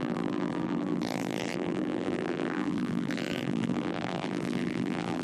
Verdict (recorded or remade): remade